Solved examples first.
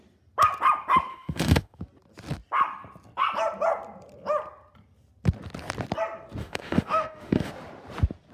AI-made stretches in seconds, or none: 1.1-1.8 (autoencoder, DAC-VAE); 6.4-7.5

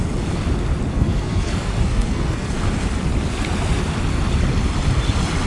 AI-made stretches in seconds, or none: 0.9-2.5 (codec, SNAC)

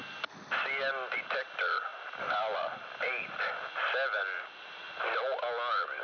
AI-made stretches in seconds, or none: 1.9-3.4 (vocoder, BigVGAN v2); 4.2-5.0